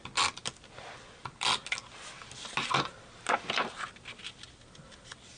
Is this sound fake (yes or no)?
no